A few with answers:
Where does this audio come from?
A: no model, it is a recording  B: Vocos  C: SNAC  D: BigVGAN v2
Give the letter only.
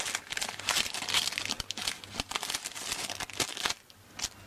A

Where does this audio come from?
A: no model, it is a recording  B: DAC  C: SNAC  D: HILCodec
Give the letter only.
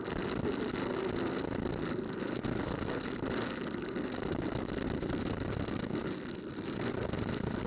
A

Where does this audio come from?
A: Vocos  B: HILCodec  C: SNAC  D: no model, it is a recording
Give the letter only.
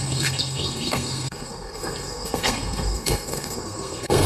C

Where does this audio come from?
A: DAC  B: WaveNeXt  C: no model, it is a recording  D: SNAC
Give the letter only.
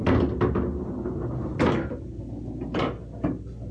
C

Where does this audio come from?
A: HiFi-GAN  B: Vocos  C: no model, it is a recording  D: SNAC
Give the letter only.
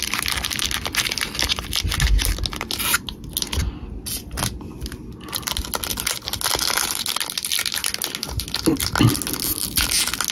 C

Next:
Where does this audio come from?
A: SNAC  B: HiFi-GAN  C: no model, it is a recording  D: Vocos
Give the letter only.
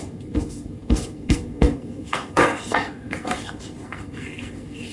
A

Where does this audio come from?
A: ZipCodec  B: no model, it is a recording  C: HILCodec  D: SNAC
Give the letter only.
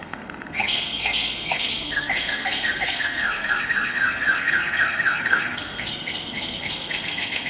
D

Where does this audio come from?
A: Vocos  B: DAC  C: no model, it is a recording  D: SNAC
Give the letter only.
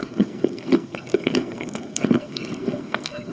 D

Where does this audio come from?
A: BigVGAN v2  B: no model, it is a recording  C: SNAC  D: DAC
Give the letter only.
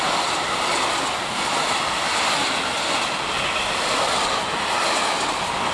B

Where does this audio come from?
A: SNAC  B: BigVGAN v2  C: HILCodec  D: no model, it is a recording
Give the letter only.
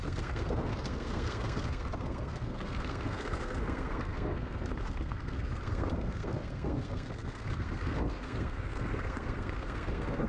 A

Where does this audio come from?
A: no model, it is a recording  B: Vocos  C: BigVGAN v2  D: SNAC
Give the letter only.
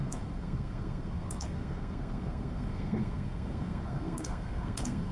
D